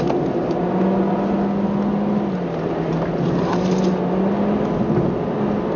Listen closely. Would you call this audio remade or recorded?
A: recorded